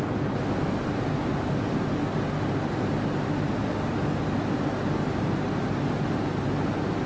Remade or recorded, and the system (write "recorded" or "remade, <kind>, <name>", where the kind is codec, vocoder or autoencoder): recorded